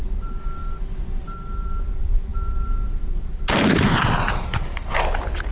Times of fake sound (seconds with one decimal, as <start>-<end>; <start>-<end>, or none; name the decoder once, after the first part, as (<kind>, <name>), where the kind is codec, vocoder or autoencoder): none